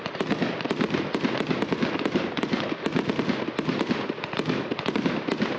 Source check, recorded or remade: recorded